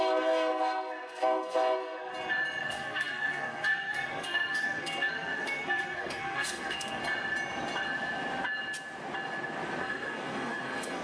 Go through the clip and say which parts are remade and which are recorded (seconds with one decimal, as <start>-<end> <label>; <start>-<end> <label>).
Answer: 0.0-2.1 remade; 2.1-2.6 recorded; 2.6-7.0 remade; 7.0-9.8 recorded; 9.8-11.0 remade